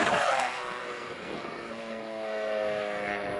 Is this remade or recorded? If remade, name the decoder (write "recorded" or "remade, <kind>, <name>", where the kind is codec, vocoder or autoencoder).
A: remade, codec, SNAC